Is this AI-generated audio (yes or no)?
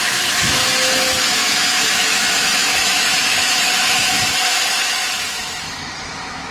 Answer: yes